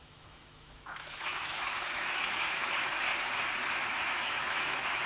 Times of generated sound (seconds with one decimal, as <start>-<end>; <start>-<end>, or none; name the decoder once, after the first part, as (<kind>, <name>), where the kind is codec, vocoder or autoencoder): 0.0-3.1 (autoencoder, DAC-VAE); 3.8-5.1